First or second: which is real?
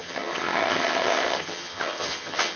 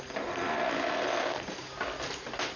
second